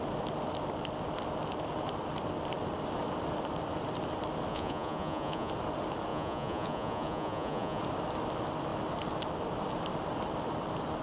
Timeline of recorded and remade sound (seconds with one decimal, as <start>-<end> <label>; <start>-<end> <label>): 0.0-4.5 recorded; 4.5-5.5 remade; 5.5-6.1 recorded; 6.1-7.8 remade; 7.8-11.0 recorded

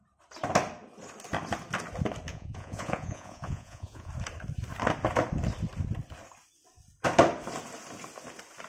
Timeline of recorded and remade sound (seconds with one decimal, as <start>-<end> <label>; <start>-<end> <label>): 0.0-2.3 recorded; 2.3-4.1 remade; 4.1-8.7 recorded

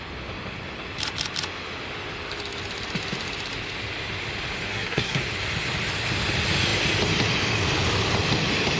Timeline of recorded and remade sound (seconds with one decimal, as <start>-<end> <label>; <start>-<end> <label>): 0.0-4.7 recorded; 4.7-5.2 remade; 5.2-8.8 recorded

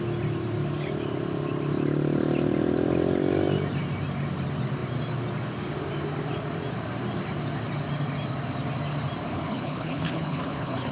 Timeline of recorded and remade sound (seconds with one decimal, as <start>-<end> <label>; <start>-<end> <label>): 0.0-9.3 recorded; 9.3-10.9 remade

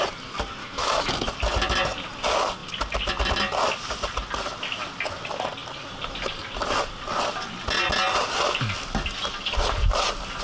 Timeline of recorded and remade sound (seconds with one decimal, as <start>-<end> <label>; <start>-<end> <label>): 0.0-0.6 recorded; 0.6-1.1 remade; 1.1-10.4 recorded